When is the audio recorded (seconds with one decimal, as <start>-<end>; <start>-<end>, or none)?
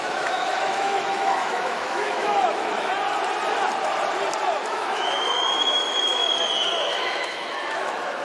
2.9-4.7; 6.2-6.8